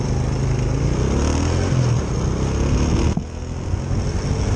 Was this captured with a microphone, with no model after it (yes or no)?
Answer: yes